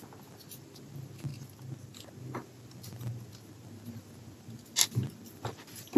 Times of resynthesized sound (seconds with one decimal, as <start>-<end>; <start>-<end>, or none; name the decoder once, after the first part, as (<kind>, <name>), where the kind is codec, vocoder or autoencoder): none